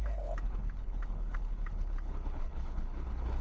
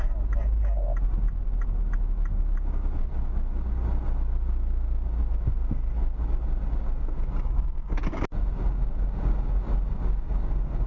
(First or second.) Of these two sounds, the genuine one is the second